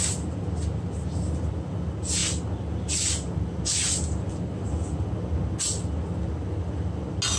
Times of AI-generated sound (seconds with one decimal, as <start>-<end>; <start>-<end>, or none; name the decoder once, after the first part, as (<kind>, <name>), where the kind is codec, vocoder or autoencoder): none